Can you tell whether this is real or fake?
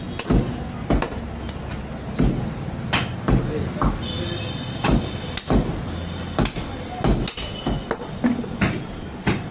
real